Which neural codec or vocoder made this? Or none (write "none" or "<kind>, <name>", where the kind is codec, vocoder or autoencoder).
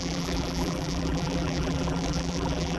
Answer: vocoder, BigVGAN v2